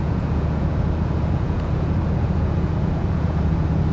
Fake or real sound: fake